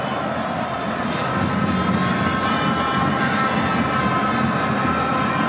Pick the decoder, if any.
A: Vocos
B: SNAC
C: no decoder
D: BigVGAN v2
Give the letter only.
C